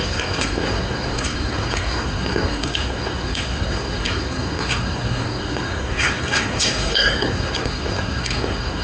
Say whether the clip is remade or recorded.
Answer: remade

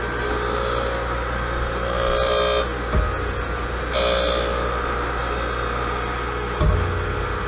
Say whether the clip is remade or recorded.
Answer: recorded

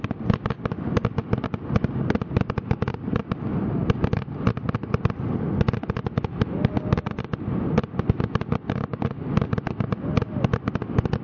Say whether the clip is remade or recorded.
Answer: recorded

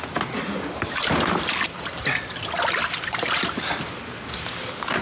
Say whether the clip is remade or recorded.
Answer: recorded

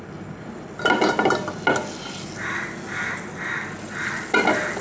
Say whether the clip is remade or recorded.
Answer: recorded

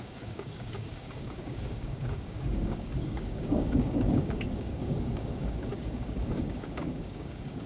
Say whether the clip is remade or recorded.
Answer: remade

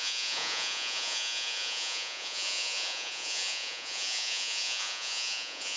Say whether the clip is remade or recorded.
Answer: remade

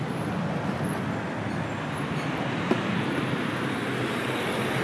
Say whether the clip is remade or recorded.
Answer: recorded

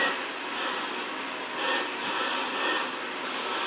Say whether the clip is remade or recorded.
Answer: recorded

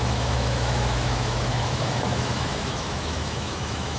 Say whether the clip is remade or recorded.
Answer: remade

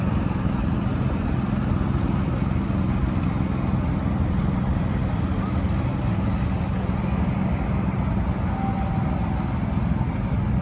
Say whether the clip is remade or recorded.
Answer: recorded